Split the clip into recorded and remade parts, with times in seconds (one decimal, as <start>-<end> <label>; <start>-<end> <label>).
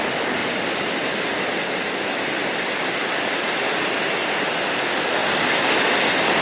0.0-6.4 recorded